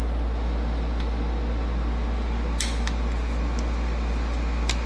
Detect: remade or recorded recorded